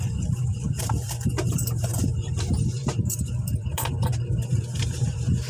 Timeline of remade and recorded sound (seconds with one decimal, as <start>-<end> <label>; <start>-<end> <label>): 0.0-5.5 remade